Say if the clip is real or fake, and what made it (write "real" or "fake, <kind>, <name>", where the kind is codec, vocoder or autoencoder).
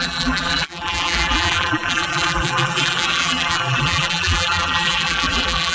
fake, vocoder, BigVGAN v2